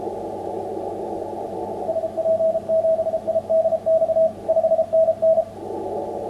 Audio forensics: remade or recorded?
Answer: recorded